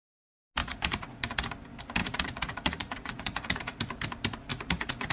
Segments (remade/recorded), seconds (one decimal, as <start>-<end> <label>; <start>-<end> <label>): 0.0-0.6 recorded; 0.6-1.3 remade; 1.3-2.0 recorded; 2.0-3.8 remade; 3.8-4.5 recorded; 4.5-5.1 remade